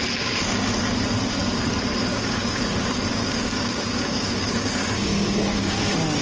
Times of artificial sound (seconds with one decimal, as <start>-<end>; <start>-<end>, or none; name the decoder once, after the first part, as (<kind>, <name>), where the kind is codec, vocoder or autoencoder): 2.1-2.6 (codec, DAC); 3.1-5.8